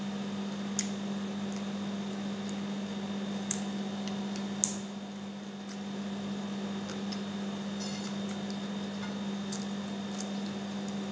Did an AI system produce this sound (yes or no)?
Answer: no